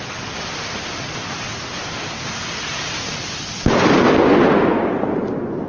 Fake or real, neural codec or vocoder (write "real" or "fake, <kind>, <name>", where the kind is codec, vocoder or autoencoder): real